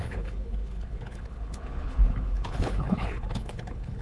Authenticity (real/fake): fake